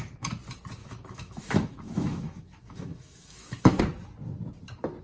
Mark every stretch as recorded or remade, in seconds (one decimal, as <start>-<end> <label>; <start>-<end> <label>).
0.0-0.8 recorded; 0.8-3.8 remade; 3.8-5.0 recorded